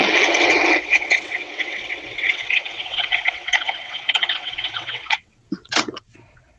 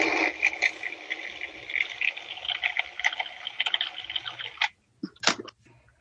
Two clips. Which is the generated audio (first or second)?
first